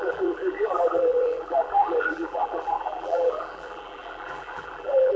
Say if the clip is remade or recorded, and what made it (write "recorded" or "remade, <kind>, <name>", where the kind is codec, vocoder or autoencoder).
remade, vocoder, BigVGAN v2